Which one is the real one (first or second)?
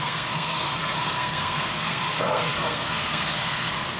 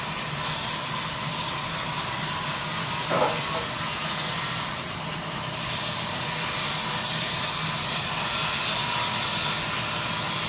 second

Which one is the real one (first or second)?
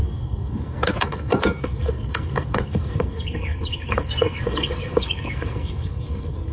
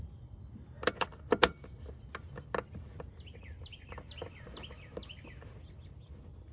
second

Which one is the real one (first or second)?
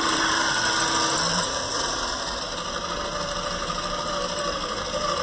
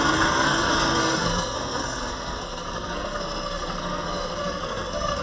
first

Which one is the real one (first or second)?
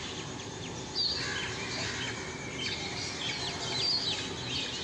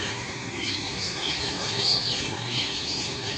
first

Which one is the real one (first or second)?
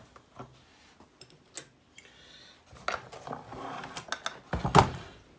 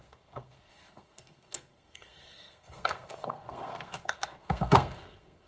first